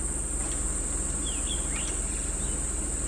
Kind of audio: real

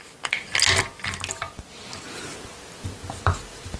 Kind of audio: real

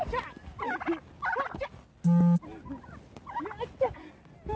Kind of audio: real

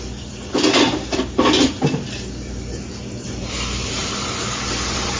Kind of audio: fake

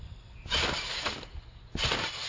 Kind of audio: real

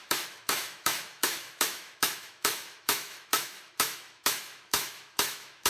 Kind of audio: fake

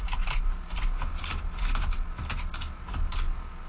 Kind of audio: real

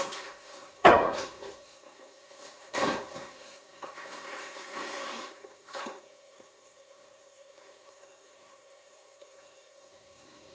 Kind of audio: fake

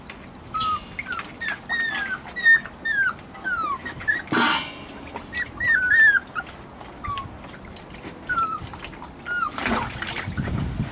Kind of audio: real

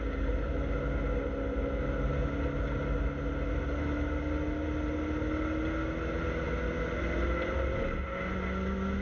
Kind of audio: real